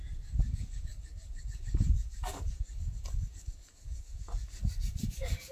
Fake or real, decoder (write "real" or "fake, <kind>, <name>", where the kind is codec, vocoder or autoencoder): fake, codec, DAC